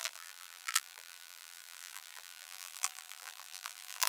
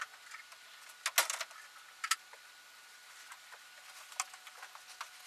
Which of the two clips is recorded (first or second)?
second